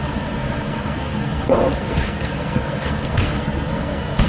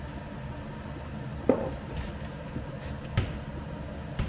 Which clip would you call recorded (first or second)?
second